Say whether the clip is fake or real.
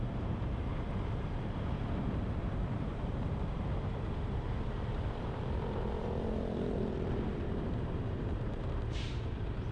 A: fake